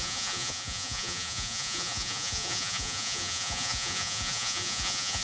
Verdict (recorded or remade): remade